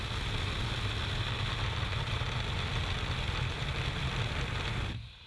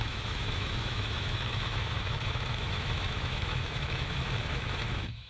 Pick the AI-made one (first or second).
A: second